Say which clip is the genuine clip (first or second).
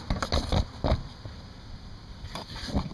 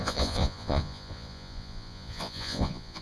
first